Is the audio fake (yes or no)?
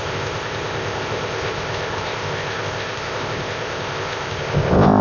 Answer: yes